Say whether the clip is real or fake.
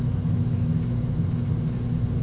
real